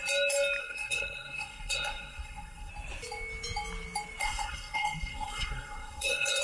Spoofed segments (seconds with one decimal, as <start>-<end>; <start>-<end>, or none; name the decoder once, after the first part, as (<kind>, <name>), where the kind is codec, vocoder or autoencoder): 0.6-2.7 (codec, SNAC); 4.2-6.4